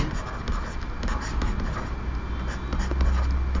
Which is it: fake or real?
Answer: real